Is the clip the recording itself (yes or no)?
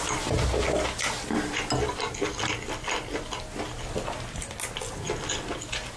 yes